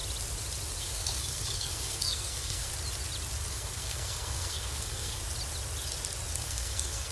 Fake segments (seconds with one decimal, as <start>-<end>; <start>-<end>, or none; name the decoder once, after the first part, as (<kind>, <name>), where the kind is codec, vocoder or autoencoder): 0.8-2.7 (codec, SNAC); 3.5-5.2; 6.4-7.1